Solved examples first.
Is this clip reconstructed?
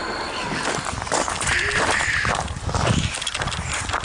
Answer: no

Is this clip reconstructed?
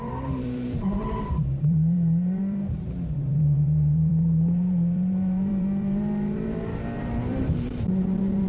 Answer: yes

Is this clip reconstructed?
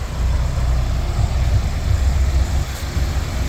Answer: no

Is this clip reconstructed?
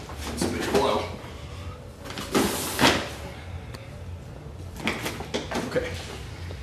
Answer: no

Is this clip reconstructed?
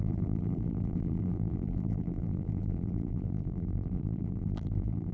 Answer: yes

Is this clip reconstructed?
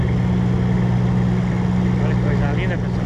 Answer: no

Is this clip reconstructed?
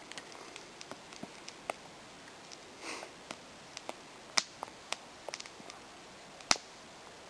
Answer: no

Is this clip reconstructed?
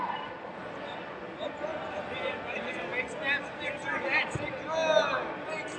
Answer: no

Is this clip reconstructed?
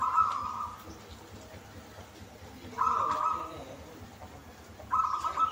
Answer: no